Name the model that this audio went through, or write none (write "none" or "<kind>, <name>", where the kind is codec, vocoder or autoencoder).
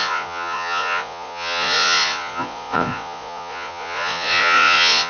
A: vocoder, Vocos